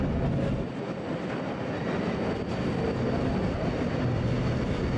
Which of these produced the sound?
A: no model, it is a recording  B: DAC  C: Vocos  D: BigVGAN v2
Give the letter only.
A